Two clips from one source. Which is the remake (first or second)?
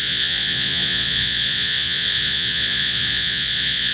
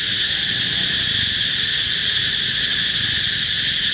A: first